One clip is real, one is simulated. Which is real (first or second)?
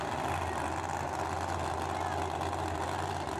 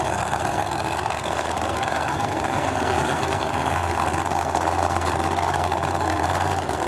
first